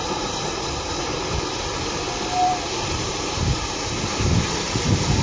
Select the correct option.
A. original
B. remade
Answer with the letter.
B